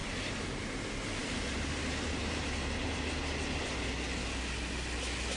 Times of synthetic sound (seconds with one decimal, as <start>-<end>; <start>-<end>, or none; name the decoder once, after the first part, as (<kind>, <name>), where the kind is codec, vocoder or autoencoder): 0.0-0.6 (vocoder, BigVGAN v2); 1.2-2.9